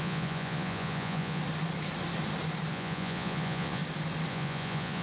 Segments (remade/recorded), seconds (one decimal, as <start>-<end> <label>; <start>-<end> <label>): 0.0-1.4 remade; 1.4-2.7 recorded; 2.7-3.8 remade; 3.8-4.3 recorded; 4.3-5.0 remade